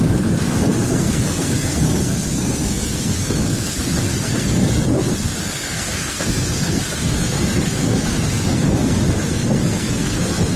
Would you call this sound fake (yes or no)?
yes